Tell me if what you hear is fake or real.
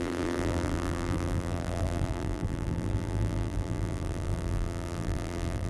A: fake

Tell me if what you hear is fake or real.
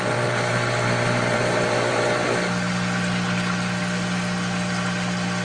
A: real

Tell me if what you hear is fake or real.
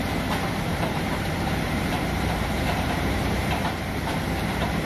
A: fake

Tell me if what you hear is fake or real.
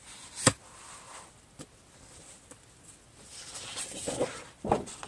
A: real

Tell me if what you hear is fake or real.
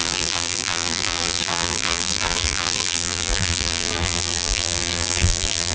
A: fake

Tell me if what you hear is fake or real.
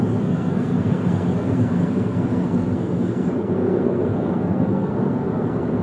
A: fake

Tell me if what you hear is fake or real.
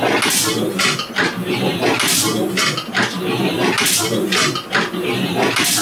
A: real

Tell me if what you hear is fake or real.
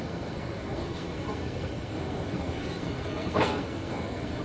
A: fake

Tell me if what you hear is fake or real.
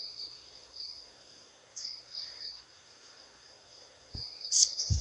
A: fake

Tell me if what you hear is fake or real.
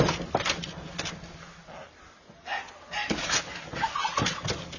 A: real